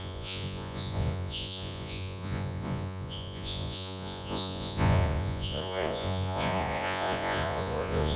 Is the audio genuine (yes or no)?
no